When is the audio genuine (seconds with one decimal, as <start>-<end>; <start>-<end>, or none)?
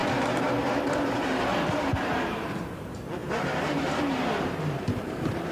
none